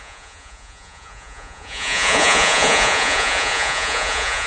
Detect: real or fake fake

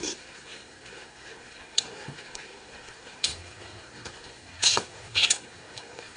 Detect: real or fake fake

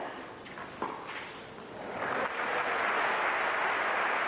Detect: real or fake real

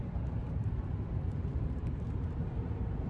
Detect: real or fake fake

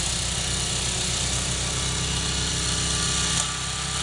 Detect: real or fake real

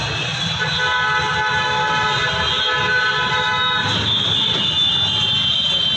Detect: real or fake real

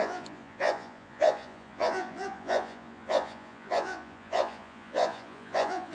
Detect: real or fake fake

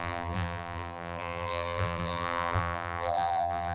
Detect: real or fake fake